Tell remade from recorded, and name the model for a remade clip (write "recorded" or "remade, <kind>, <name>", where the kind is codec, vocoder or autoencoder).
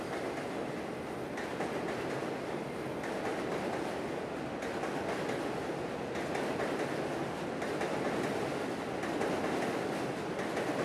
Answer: recorded